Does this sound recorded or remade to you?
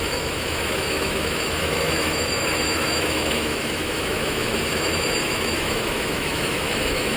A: remade